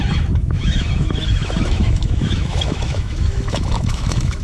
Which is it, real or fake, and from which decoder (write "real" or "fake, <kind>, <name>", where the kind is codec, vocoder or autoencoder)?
fake, autoencoder, DAC-VAE